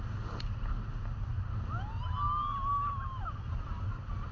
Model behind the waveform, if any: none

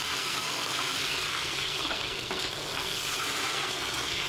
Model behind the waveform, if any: codec, SNAC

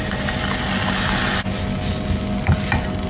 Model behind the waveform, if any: none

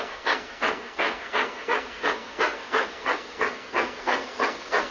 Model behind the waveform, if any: codec, SNAC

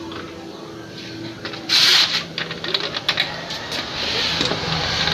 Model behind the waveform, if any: none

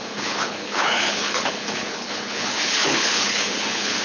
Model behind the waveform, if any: codec, HILCodec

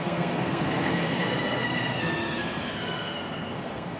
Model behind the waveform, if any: codec, SNAC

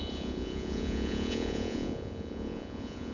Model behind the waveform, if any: vocoder, Vocos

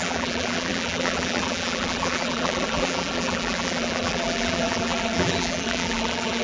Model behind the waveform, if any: vocoder, BigVGAN v2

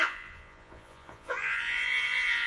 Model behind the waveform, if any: vocoder, Vocos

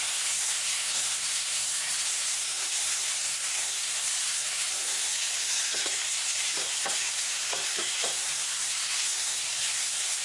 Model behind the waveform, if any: codec, SNAC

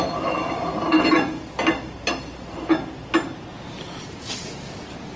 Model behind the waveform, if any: none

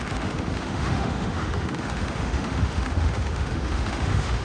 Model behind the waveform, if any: autoencoder, DAC-VAE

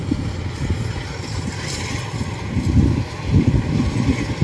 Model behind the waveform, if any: none